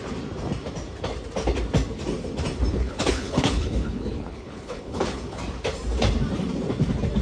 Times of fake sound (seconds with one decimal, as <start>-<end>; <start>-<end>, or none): 2.7-5.4